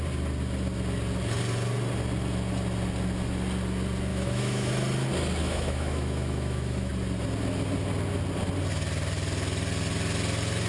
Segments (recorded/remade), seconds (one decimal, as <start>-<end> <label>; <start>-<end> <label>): 0.0-4.1 recorded; 4.1-4.7 remade; 4.7-5.4 recorded; 5.4-6.9 remade; 6.9-10.7 recorded